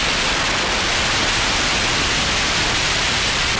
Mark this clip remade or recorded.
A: recorded